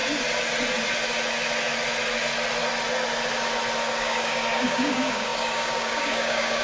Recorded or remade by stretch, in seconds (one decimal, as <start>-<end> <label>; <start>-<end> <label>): 0.0-4.0 recorded; 4.0-6.6 remade